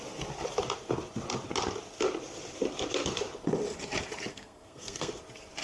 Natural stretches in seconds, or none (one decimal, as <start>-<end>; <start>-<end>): 0.0-4.3; 5.1-5.6